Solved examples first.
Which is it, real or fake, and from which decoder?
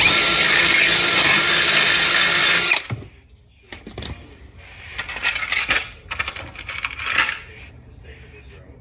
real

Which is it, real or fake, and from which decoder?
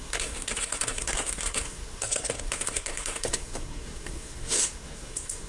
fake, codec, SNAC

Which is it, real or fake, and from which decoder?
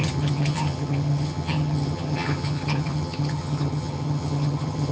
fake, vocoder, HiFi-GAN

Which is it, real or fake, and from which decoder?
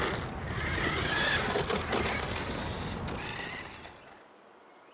real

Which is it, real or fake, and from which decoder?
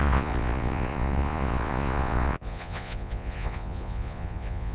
fake, vocoder, Vocos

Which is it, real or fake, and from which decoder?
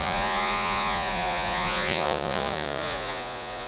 fake, vocoder, Vocos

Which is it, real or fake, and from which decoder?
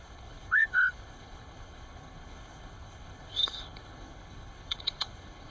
fake, codec, HILCodec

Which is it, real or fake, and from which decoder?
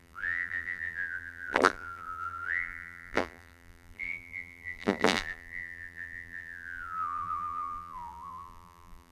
fake, vocoder, BigVGAN v2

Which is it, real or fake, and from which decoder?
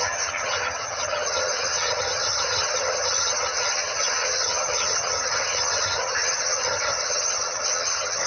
fake, vocoder, HiFi-GAN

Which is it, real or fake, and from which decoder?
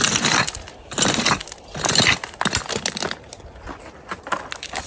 real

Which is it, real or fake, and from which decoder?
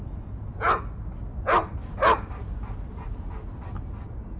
real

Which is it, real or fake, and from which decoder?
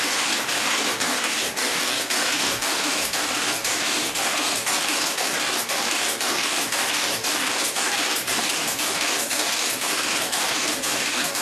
fake, codec, DAC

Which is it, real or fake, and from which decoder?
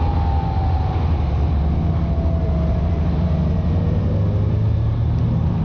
real